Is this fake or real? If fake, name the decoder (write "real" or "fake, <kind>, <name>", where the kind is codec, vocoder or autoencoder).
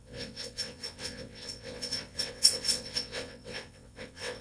fake, vocoder, WaveNeXt